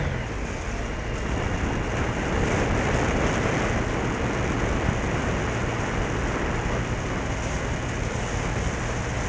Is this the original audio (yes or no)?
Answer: yes